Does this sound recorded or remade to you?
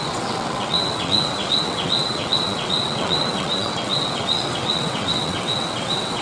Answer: remade